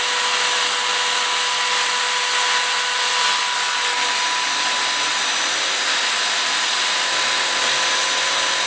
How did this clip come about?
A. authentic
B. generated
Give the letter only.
A